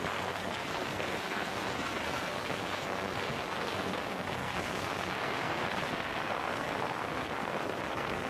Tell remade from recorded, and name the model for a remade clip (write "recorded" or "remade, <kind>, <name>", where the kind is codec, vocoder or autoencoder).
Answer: remade, codec, SNAC